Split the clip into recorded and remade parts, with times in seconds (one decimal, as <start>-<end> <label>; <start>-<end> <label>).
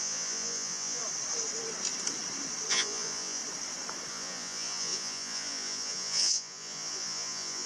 0.0-1.0 remade; 1.0-2.7 recorded; 2.7-3.4 remade; 3.4-4.1 recorded; 4.1-7.7 remade